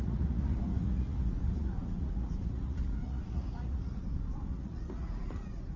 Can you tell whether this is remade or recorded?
remade